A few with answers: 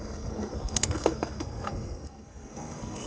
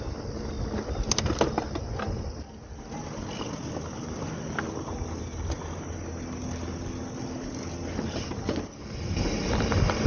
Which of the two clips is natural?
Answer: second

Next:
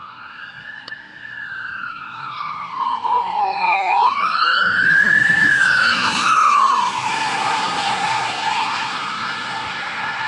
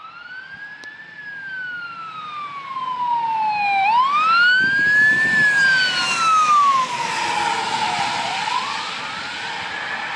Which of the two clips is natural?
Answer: second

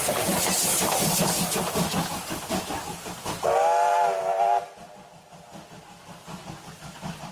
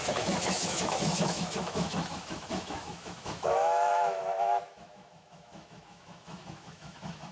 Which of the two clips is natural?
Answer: first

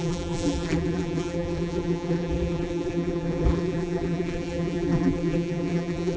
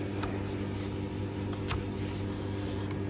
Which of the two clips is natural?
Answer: second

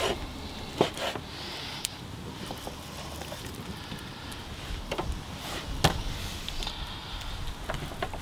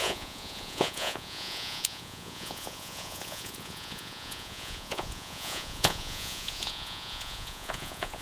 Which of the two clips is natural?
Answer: first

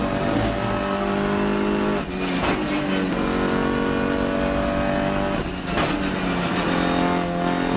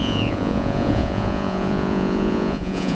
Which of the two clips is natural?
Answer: first